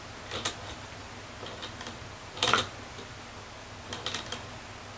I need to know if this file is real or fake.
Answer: real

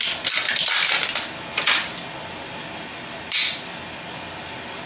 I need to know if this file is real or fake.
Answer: real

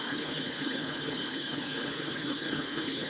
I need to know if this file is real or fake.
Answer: fake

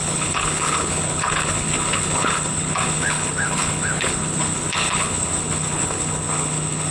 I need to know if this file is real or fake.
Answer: fake